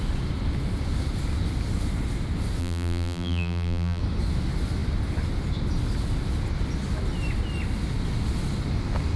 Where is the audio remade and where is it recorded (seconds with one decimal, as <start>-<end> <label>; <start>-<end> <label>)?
0.0-2.6 recorded; 2.6-4.0 remade; 4.0-9.2 recorded